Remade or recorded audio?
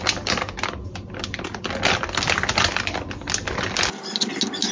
recorded